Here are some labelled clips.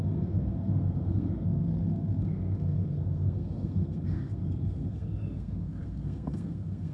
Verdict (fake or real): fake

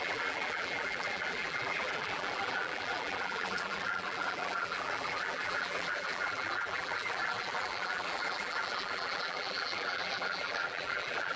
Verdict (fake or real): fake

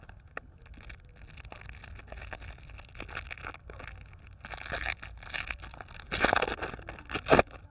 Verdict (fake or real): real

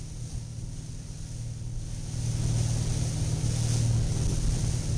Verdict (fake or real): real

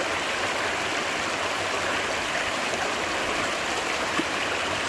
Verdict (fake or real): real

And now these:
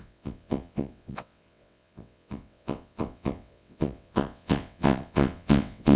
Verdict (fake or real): fake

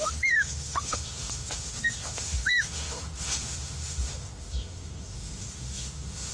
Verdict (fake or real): fake